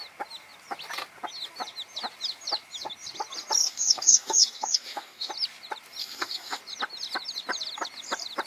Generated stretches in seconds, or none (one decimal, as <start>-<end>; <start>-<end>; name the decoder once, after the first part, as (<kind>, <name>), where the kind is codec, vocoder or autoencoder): 3.6-5.3 (codec, DAC); 6.0-6.6